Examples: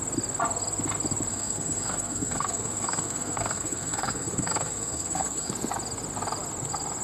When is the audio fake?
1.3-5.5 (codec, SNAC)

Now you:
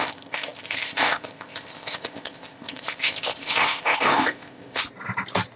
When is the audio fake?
0.0-4.8 (codec, ZipCodec)

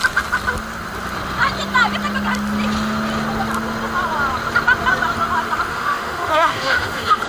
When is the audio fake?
5.7-7.3 (autoencoder, DAC-VAE)

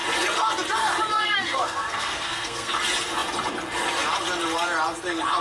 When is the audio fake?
1.1-2.7 (codec, SNAC)

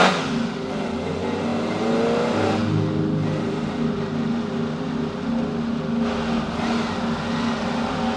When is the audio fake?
none

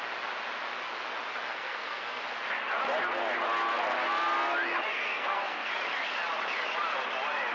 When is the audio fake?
1.5-2.2 (codec, SNAC); 4.9-5.7